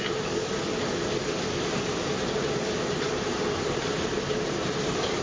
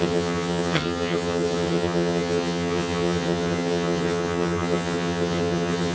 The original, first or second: first